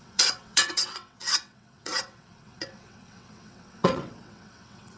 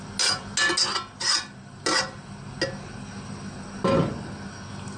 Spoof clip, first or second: first